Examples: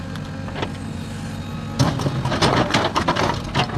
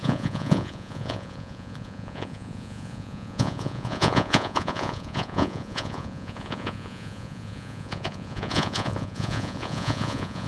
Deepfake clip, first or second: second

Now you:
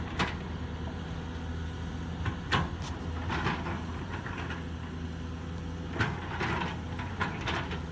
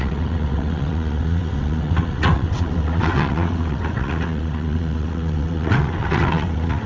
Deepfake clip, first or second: second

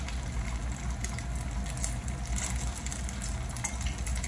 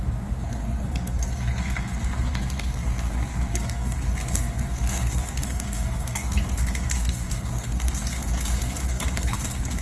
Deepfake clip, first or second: second